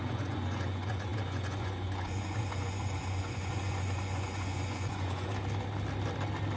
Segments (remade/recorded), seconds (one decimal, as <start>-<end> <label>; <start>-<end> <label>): 0.0-5.3 remade; 5.3-6.6 recorded